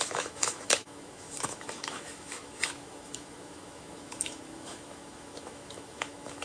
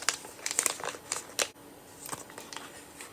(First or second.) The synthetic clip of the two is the first